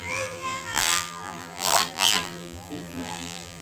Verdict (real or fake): fake